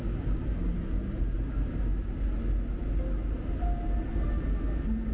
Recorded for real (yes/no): yes